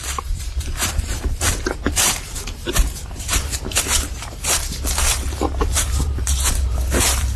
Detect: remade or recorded remade